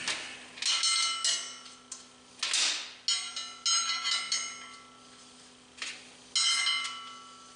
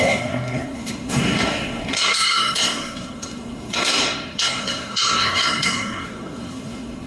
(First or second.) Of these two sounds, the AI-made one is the second